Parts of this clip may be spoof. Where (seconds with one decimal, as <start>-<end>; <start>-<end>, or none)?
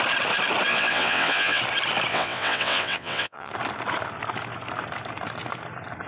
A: 0.7-1.6; 2.1-3.5